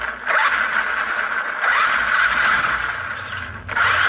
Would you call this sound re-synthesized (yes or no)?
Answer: no